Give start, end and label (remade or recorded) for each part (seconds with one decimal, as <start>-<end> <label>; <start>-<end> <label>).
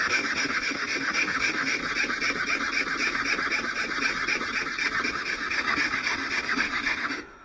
0.0-1.8 remade; 1.8-5.1 recorded; 5.1-7.4 remade